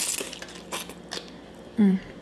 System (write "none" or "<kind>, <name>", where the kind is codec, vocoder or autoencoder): none